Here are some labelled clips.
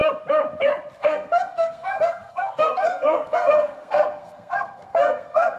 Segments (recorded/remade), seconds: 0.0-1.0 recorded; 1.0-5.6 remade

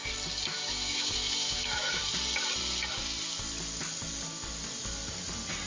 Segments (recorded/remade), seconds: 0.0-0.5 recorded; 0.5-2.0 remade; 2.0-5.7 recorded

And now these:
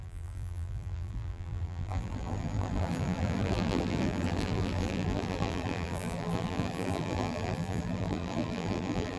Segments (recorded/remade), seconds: 0.0-9.2 remade